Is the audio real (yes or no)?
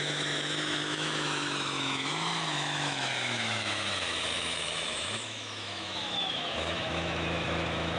no